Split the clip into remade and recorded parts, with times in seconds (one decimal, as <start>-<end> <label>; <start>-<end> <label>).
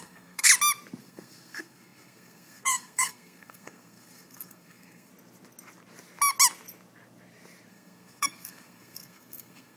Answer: 0.0-0.5 remade; 0.5-1.0 recorded; 1.0-5.1 remade; 5.1-7.7 recorded; 7.7-9.8 remade